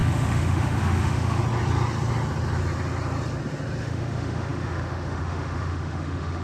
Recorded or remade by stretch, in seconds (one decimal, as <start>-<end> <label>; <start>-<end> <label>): 0.0-1.4 remade; 1.4-3.8 recorded; 3.8-6.4 remade